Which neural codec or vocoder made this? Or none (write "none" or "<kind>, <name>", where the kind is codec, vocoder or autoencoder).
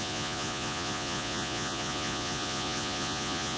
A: vocoder, Vocos